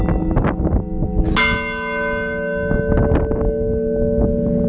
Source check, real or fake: real